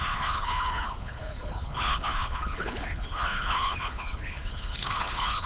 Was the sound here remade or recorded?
remade